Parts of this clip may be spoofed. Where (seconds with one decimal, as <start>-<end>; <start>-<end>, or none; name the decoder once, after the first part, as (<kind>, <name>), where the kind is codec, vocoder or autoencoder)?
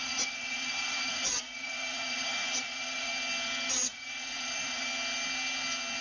0.0-3.1 (vocoder, Vocos); 3.7-4.9